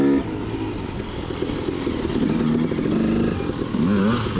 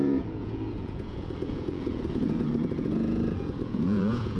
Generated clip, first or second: second